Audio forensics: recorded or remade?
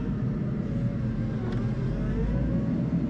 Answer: recorded